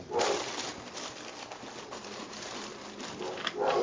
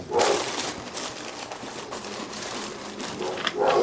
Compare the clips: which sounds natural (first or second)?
first